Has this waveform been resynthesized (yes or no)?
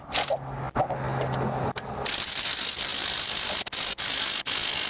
no